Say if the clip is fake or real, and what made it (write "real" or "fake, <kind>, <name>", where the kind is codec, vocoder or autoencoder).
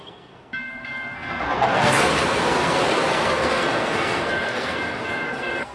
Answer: fake, codec, SNAC